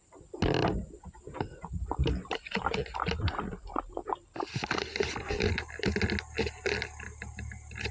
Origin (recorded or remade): recorded